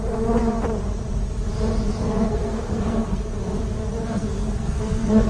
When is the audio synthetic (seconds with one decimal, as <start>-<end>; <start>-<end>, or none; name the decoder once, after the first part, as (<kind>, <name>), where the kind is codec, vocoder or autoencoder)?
1.9-3.3 (codec, SNAC); 4.0-5.3